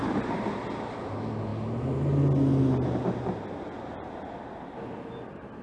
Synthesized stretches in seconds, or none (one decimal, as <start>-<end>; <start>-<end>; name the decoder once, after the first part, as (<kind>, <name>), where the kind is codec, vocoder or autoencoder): none